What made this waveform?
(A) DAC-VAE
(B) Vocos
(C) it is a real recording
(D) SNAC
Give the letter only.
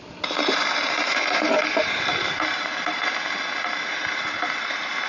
C